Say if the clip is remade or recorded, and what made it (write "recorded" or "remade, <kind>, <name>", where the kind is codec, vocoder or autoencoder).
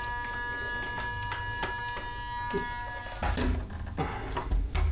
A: recorded